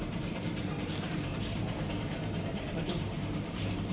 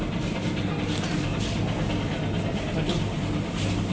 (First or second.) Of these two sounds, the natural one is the second